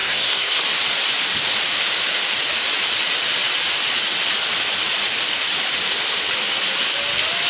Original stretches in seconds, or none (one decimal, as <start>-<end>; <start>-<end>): 0.6-7.5